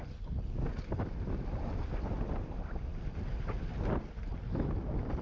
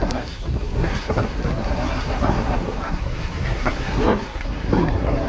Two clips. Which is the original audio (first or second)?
first